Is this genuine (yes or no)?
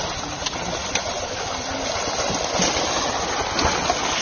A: yes